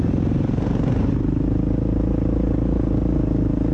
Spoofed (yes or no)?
no